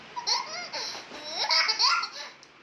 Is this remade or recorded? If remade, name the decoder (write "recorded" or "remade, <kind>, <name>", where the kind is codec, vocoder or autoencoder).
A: recorded